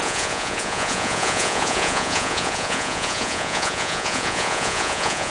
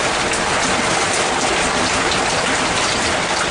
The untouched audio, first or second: second